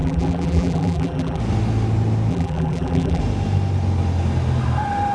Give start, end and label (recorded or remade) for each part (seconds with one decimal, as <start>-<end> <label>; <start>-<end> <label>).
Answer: 0.0-1.4 remade; 1.4-2.3 recorded; 2.3-3.2 remade; 3.2-5.1 recorded